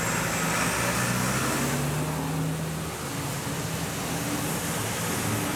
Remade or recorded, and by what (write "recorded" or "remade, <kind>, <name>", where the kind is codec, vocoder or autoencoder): recorded